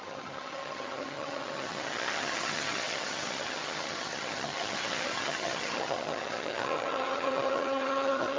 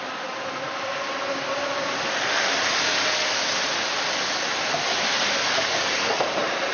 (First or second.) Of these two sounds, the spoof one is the first